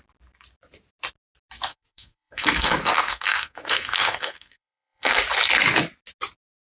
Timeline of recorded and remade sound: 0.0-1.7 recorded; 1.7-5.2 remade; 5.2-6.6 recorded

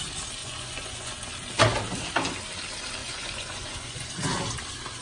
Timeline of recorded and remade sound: 0.0-0.4 recorded; 0.4-1.3 remade; 1.3-3.0 recorded; 3.0-4.1 remade; 4.1-5.0 recorded

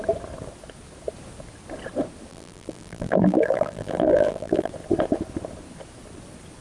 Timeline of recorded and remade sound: 0.0-2.3 recorded; 2.3-4.7 remade; 4.7-6.6 recorded

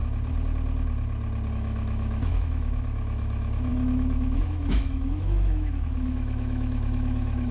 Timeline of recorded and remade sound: 0.0-1.5 recorded; 1.5-7.5 remade

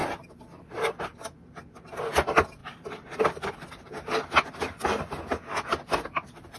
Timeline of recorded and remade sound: 0.0-1.0 remade; 1.0-2.6 recorded; 2.6-3.7 remade; 3.7-6.6 recorded

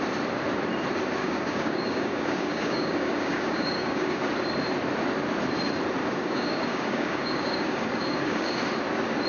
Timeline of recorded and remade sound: 0.0-1.2 recorded; 1.2-4.2 remade; 4.2-6.0 recorded; 6.0-8.6 remade; 8.6-9.3 recorded

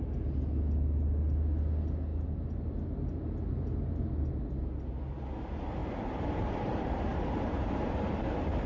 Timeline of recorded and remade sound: 0.0-5.8 recorded; 5.8-8.7 remade

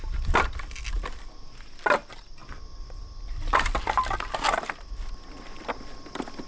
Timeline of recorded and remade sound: 0.0-6.5 recorded